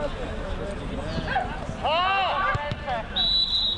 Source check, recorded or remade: recorded